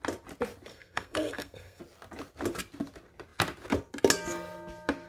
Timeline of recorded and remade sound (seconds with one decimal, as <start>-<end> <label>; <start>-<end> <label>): 0.0-0.7 recorded; 0.7-1.8 remade; 1.8-5.1 recorded